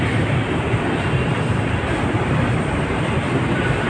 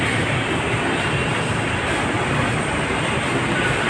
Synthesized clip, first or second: first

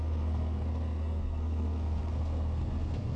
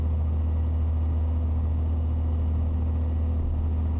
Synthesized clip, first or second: first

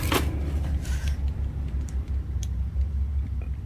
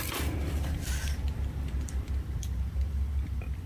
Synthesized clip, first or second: second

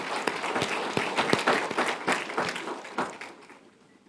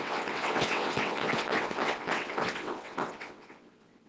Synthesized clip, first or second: second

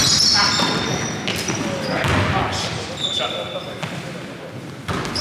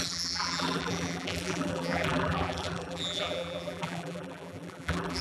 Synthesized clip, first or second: second